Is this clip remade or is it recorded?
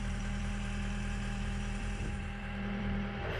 remade